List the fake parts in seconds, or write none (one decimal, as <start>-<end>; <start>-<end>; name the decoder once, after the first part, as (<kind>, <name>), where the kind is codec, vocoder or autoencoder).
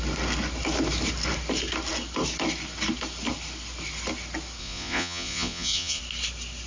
4.6-6.0 (vocoder, Vocos)